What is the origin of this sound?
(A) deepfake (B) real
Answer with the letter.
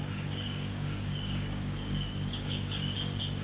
A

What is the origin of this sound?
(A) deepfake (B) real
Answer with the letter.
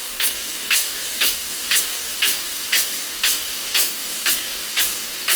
A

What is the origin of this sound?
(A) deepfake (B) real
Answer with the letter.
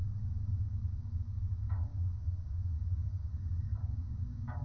A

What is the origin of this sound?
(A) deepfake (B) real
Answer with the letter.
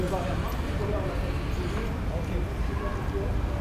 B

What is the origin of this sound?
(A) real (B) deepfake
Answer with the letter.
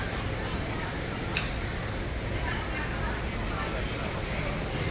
A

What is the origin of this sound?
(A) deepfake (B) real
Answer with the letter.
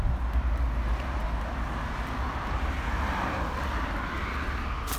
B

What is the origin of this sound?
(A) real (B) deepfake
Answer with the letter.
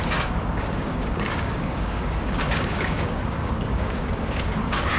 B